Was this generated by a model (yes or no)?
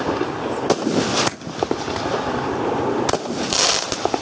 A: no